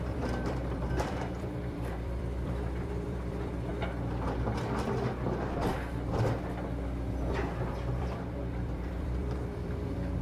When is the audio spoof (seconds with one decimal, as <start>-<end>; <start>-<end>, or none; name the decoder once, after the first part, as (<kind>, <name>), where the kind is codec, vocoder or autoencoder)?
0.0-3.7 (vocoder, BigVGAN v2); 7.7-10.2